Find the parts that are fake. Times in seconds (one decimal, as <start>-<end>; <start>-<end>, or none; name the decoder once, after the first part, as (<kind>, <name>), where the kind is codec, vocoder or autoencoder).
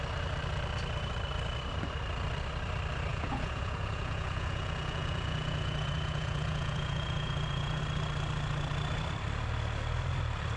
3.1-7.8 (vocoder, Vocos)